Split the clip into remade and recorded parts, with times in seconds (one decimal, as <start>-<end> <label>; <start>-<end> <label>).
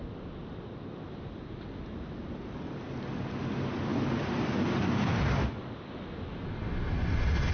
0.0-7.5 recorded